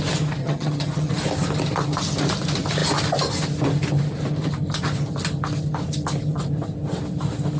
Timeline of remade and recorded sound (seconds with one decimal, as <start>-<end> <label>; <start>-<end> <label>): 0.0-0.4 recorded; 0.4-1.1 remade; 1.1-7.6 recorded